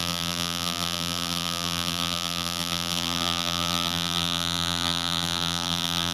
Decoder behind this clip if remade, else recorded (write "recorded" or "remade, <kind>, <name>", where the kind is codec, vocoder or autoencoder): remade, vocoder, BigVGAN v2